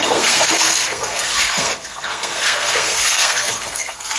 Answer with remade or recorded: remade